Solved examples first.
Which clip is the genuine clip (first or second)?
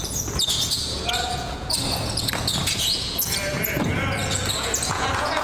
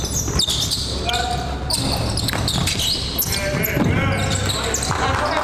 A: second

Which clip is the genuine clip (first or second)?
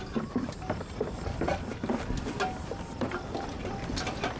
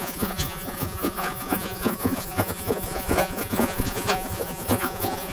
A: first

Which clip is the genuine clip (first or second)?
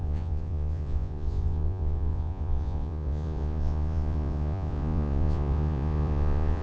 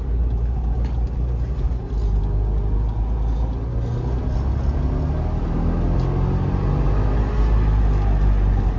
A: second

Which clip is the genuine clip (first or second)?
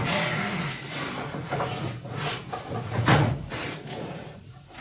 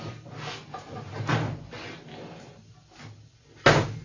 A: second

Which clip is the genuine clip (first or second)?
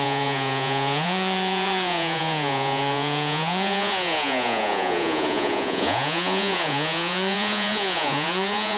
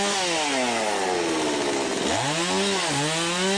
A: second